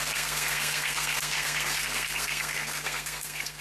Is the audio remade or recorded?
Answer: remade